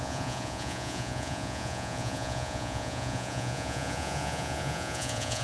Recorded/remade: remade